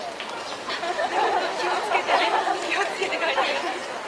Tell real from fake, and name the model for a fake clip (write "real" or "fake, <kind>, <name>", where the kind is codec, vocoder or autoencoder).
real